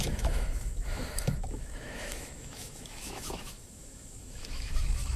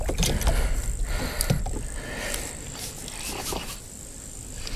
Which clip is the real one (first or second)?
second